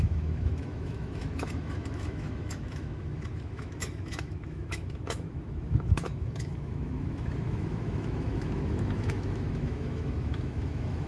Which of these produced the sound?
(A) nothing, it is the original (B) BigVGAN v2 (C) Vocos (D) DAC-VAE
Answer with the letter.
D